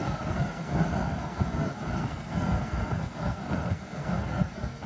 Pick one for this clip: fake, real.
fake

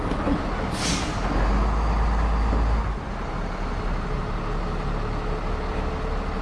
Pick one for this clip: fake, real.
real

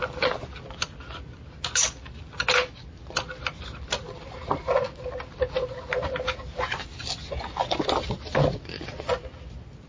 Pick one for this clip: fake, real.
real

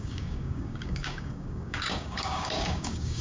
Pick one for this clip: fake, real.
fake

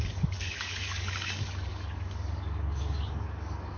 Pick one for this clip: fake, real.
fake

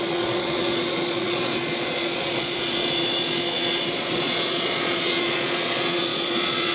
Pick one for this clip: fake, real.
fake